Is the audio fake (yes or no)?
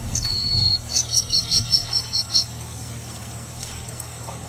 yes